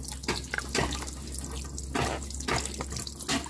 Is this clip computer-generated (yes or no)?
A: no